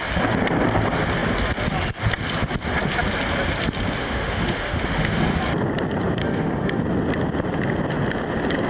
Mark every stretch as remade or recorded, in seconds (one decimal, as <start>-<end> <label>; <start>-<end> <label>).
0.0-4.0 recorded; 4.0-5.4 remade; 5.4-6.2 recorded; 6.2-6.8 remade; 6.8-8.7 recorded